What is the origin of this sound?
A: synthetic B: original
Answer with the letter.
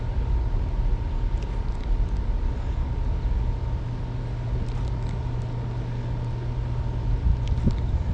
B